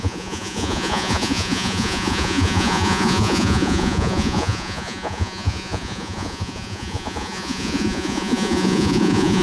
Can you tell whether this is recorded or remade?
remade